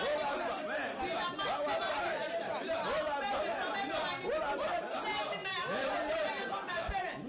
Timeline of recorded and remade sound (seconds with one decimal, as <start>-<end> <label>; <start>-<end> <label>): 0.0-5.4 recorded; 5.4-7.3 remade